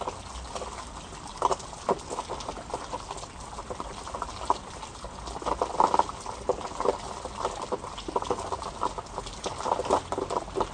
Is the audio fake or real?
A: real